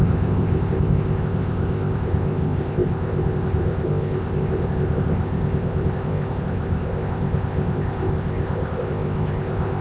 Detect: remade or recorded remade